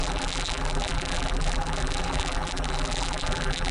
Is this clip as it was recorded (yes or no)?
no